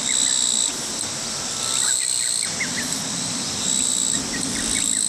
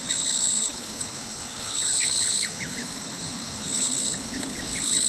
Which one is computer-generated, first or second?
second